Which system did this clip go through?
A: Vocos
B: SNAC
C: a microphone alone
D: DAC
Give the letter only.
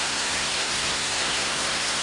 B